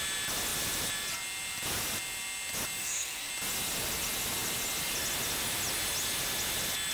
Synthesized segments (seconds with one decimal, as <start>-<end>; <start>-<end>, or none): 2.8-3.3